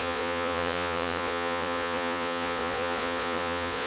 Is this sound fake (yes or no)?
yes